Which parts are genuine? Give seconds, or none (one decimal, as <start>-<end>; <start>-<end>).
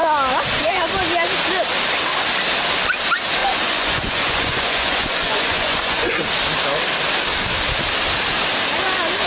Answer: 0.0-3.4; 6.2-9.3